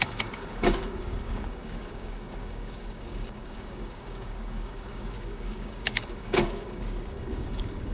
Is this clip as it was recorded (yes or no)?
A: no